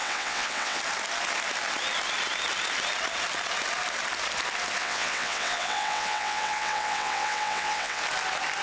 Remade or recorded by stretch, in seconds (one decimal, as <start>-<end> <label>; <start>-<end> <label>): 0.0-0.8 remade; 0.8-4.8 recorded; 4.8-8.0 remade; 8.0-8.6 recorded